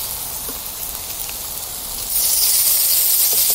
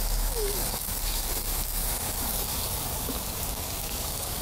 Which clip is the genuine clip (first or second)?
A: first